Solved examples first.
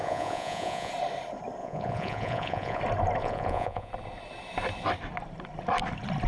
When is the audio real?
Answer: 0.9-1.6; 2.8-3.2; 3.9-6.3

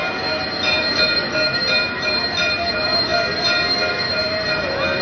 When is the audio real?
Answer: 0.0-5.0

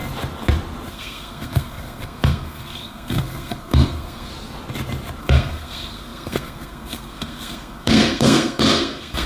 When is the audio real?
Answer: 0.0-0.9; 4.3-5.2

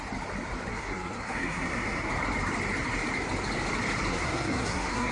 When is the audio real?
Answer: 0.0-0.7; 2.1-4.1

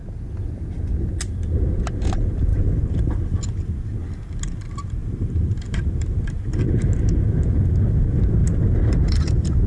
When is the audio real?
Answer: 0.0-2.5; 3.1-5.0; 6.2-8.4

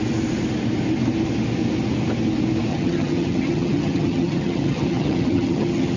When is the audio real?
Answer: 0.0-2.7